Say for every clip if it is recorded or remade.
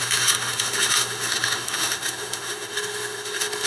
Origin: remade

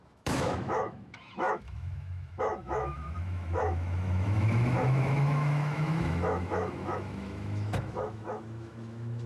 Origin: remade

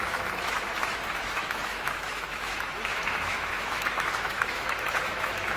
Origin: remade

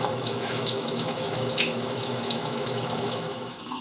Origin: remade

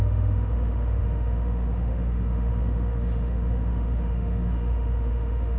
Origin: remade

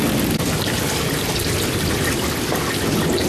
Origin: recorded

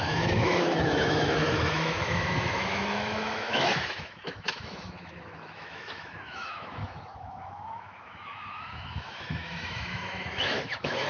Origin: remade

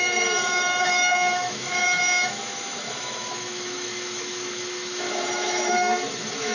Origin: remade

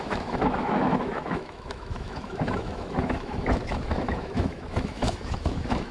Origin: remade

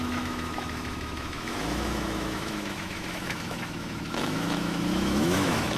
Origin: remade